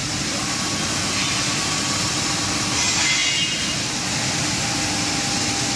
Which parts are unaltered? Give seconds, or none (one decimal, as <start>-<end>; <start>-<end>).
0.0-5.8

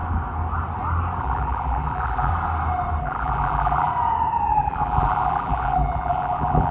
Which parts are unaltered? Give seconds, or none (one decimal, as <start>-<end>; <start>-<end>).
0.0-1.2; 2.3-3.0; 3.9-4.5

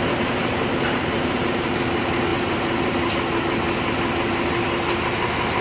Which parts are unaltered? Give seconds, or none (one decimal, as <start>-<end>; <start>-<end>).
0.0-0.4; 1.4-2.3; 3.1-5.6

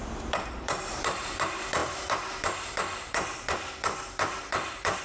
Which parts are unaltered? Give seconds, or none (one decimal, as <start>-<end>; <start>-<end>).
none

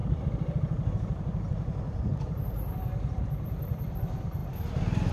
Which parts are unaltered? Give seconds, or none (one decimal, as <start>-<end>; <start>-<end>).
0.0-5.1

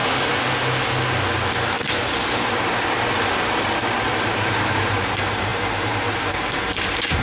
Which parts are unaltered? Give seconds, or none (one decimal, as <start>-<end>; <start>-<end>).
0.0-4.0